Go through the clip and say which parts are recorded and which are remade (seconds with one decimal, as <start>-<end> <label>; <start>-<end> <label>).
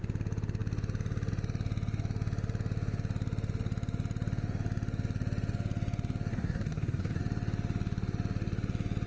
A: 0.0-6.3 recorded; 6.3-7.2 remade; 7.2-9.1 recorded